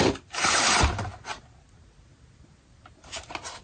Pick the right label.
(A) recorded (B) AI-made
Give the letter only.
A